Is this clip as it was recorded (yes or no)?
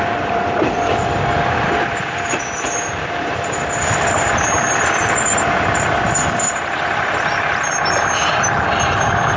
no